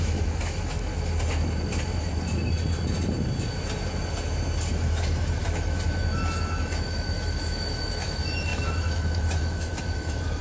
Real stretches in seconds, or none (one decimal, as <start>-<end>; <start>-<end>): 0.9-4.7

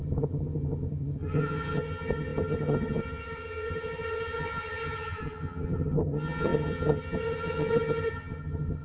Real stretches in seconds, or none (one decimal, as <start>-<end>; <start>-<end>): none

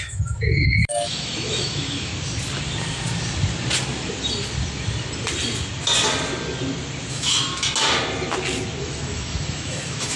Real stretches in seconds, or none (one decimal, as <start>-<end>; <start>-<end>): 2.1-7.1; 7.5-8.8

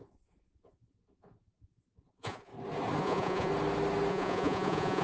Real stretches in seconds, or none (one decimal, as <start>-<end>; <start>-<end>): 2.5-3.0; 3.5-4.1

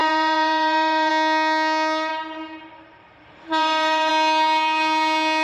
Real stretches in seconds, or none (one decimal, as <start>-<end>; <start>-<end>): 1.1-2.1; 4.1-5.4